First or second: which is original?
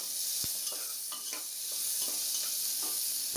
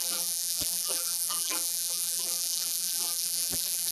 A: first